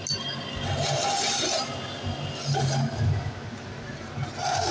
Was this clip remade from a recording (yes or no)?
no